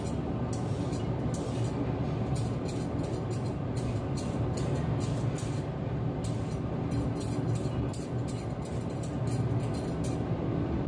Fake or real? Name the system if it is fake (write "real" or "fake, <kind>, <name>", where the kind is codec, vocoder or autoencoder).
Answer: real